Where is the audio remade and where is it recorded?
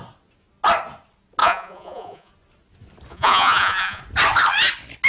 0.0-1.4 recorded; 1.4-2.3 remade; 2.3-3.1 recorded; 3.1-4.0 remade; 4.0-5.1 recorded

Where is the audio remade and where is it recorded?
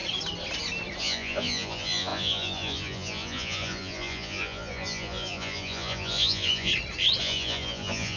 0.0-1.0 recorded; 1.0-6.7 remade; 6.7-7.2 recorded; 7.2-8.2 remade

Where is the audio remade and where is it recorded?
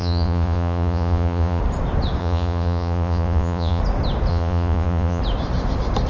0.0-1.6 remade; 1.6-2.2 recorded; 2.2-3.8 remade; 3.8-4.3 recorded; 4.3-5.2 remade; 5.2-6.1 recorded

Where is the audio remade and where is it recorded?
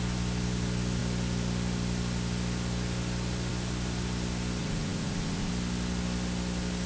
0.0-4.6 recorded; 4.6-5.5 remade; 5.5-6.9 recorded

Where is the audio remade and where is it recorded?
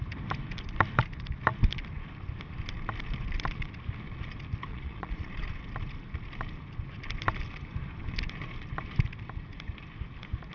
0.0-4.7 recorded; 4.7-5.5 remade; 5.5-10.5 recorded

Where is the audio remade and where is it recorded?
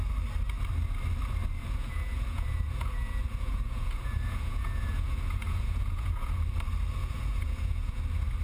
0.0-1.6 recorded; 1.6-6.4 remade; 6.4-7.0 recorded; 7.0-8.0 remade; 8.0-8.4 recorded